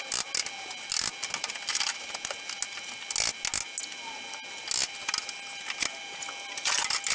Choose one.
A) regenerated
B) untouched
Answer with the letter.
B